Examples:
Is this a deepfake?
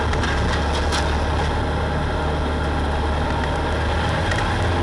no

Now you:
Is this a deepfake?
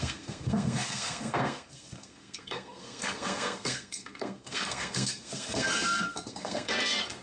yes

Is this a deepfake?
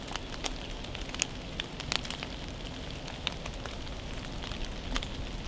no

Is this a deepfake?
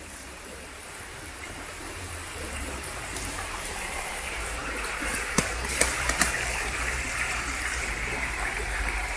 yes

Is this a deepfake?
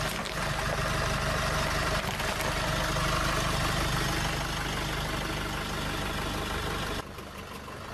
no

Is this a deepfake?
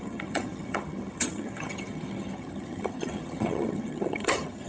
yes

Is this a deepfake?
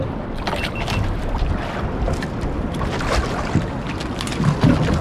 no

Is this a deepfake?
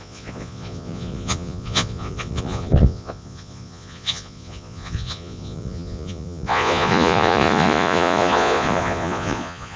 yes